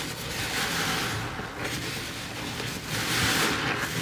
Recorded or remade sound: recorded